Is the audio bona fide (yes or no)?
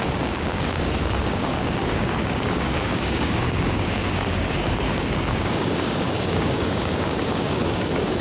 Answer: no